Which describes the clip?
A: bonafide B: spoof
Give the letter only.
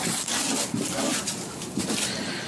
A